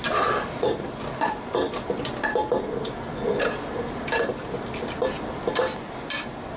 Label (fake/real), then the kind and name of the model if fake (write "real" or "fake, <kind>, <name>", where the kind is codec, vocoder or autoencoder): real